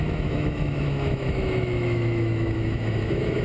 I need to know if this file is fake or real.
fake